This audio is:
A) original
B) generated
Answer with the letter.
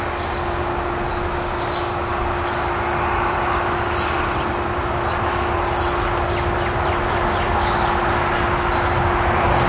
A